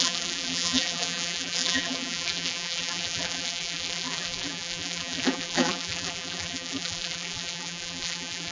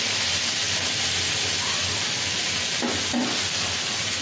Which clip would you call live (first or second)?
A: second